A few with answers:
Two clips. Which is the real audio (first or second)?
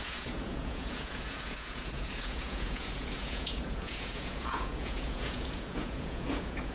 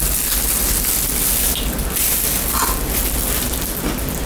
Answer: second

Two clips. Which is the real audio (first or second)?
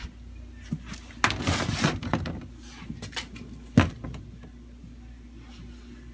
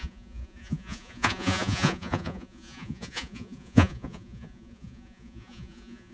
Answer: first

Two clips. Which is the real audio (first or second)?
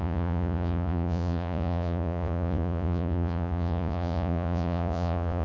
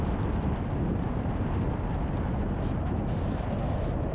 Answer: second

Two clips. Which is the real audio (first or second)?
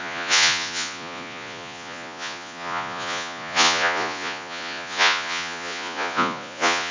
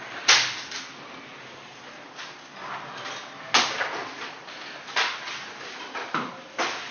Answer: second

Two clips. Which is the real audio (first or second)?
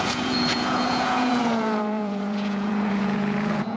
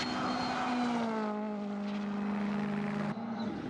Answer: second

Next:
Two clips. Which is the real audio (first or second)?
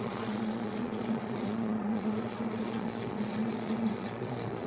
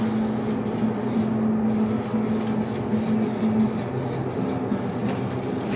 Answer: second